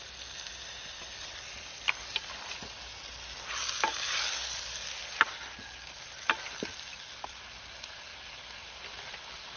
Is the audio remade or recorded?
recorded